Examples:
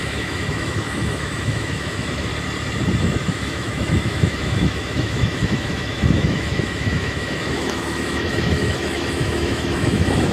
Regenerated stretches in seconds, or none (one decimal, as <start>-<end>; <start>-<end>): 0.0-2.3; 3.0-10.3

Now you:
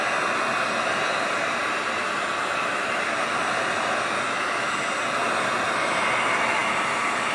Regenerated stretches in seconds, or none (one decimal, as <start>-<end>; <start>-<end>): none

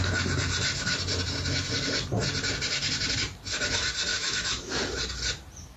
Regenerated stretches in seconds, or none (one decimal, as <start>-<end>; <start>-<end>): 4.1-4.7